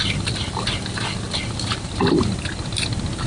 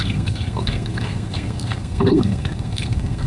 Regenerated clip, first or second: second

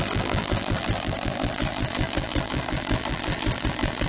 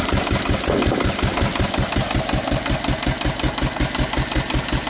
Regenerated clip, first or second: first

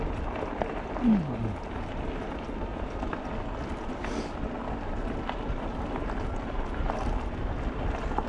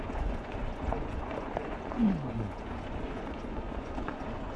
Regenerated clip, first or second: second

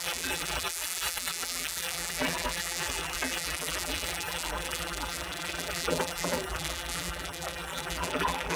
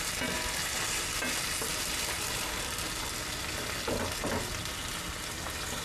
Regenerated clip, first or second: first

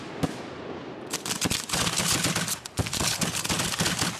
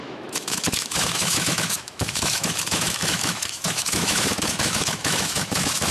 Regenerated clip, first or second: second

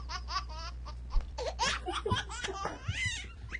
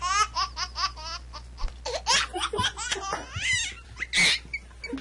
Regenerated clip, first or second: first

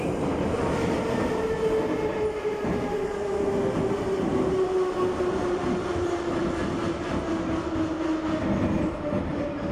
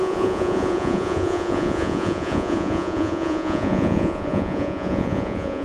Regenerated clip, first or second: second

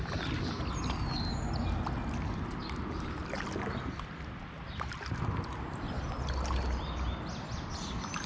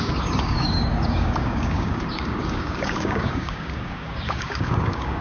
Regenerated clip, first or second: second